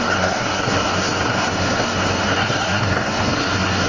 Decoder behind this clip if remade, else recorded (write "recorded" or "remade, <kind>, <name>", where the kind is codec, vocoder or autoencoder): remade, codec, SNAC